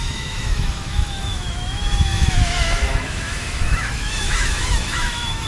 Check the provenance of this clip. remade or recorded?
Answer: remade